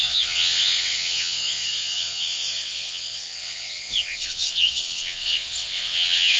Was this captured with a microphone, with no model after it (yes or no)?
no